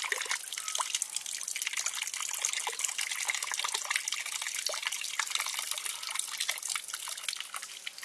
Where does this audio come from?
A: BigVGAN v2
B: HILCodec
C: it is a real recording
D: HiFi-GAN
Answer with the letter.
C